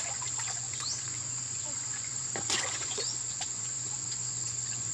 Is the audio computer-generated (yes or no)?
yes